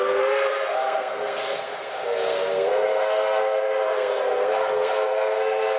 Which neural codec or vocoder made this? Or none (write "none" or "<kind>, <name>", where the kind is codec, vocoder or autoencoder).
codec, SNAC